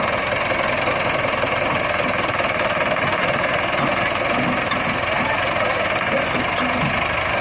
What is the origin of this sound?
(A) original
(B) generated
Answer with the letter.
A